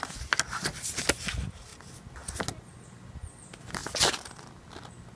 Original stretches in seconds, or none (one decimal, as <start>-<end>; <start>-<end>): 0.0-5.2